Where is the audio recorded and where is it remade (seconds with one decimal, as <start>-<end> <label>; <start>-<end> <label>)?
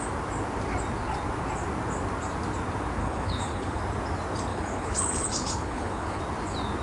0.0-3.0 recorded; 3.0-3.8 remade; 3.8-4.5 recorded; 4.5-6.2 remade; 6.2-6.8 recorded